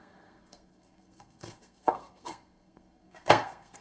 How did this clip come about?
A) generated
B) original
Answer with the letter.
A